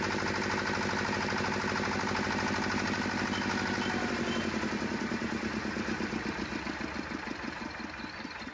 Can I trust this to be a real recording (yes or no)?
yes